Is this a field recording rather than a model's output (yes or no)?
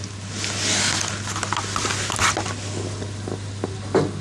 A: yes